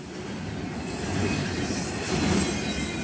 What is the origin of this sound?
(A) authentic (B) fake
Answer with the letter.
A